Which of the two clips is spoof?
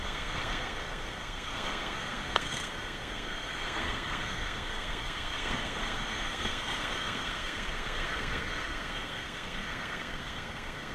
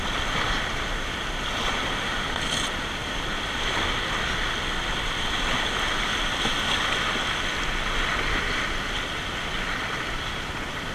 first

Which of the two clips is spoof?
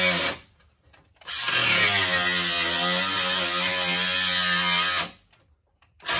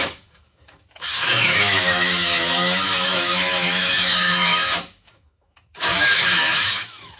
second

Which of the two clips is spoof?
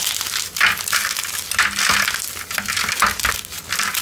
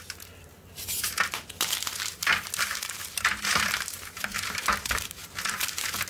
second